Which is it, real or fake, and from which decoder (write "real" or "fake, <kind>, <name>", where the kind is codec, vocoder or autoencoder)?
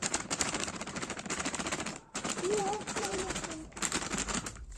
fake, vocoder, BigVGAN v2